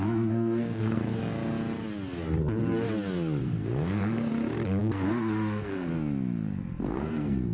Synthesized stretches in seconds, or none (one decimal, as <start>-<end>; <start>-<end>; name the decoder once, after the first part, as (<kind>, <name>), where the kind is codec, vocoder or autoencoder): 0.0-1.2 (codec, SNAC); 3.4-4.3; 4.8-5.9; 6.8-7.5

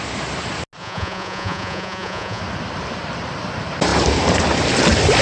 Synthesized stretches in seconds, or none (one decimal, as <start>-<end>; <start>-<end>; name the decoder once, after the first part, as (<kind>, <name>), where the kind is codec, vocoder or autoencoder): 0.8-2.4 (vocoder, Vocos)

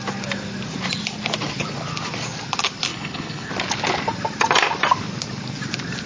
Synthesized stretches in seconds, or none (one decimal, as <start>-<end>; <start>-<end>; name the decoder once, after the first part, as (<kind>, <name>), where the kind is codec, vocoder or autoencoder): 2.9-3.5 (codec, HILCodec)

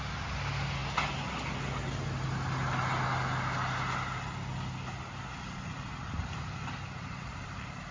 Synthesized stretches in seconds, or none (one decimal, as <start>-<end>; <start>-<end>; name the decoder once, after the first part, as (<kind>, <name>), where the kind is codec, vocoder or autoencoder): none

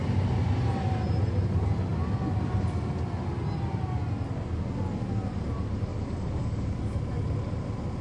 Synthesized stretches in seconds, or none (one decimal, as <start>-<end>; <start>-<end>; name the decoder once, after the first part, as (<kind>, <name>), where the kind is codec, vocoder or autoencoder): 5.9-6.8 (codec, DAC)